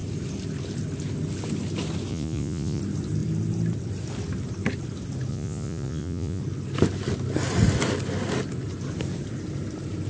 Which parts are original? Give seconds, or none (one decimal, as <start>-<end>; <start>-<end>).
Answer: 0.0-2.1; 2.8-5.3; 6.4-10.1